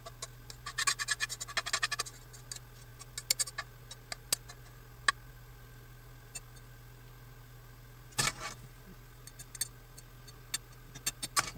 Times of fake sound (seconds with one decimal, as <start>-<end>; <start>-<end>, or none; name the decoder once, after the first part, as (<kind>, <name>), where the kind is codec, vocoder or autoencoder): none